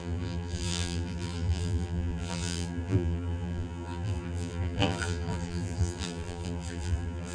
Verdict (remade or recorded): remade